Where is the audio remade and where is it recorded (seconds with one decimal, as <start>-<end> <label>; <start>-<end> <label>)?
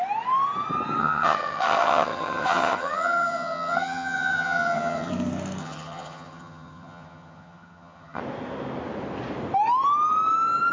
0.0-1.0 recorded; 1.0-5.1 remade; 5.1-5.6 recorded; 5.6-8.2 remade; 8.2-10.7 recorded